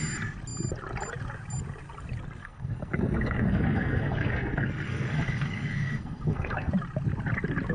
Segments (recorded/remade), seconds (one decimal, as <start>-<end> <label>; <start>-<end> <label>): 0.0-2.4 recorded; 2.4-6.7 remade; 6.7-7.7 recorded